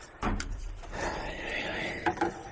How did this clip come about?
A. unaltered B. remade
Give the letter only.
B